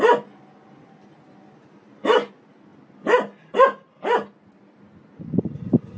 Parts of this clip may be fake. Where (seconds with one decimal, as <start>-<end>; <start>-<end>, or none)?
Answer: none